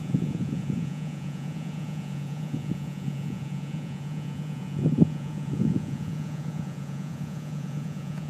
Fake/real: fake